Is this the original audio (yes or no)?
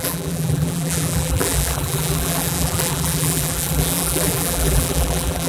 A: no